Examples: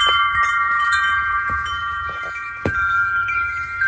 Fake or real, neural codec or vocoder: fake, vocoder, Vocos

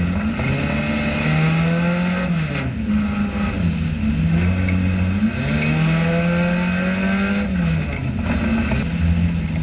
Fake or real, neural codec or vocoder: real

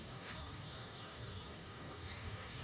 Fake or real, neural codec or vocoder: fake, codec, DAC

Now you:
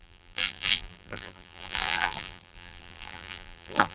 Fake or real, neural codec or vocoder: fake, vocoder, BigVGAN v2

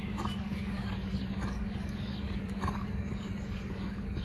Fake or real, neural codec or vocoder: fake, codec, DAC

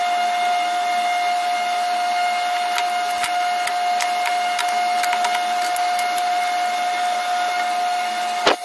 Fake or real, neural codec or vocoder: real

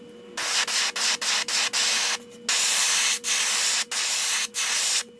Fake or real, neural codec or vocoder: real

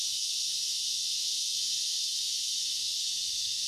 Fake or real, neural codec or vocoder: fake, autoencoder, DAC-VAE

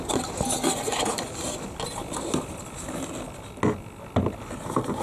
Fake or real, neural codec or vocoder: real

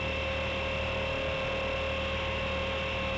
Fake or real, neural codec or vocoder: real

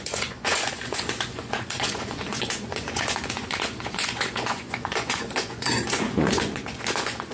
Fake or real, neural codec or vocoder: fake, vocoder, Vocos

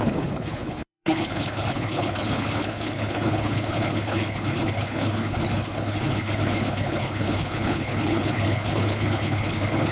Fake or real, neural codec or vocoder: fake, codec, HILCodec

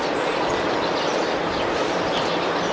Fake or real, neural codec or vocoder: real